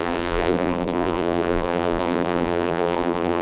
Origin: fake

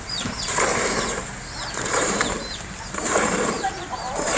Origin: fake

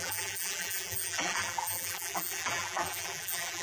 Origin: fake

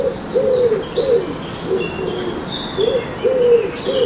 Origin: real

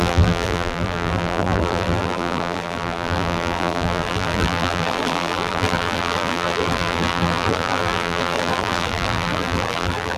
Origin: fake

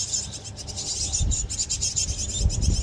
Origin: real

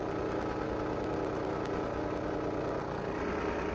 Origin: real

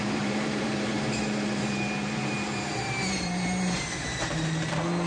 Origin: fake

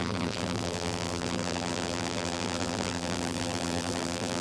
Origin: fake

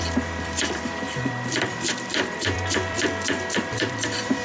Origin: fake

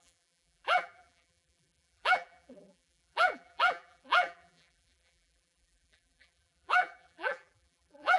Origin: fake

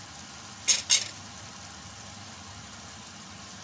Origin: real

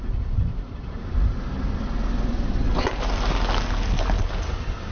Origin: real